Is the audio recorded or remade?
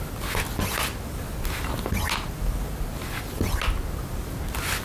recorded